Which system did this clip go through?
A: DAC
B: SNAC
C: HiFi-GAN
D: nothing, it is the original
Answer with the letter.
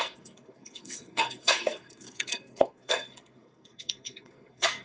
B